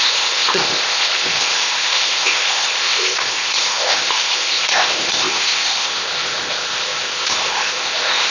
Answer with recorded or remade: remade